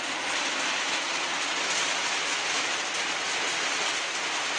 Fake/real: real